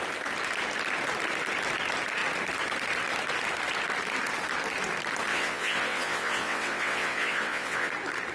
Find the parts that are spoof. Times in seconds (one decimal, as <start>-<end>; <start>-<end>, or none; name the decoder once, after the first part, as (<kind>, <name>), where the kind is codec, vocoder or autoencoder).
5.3-7.9 (vocoder, WaveNeXt)